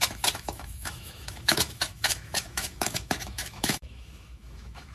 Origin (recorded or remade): remade